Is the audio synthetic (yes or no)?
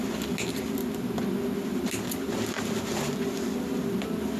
no